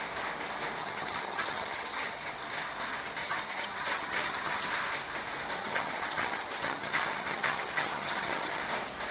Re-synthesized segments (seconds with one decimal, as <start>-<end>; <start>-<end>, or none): 0.8-2.3; 3.2-4.7; 5.6-8.6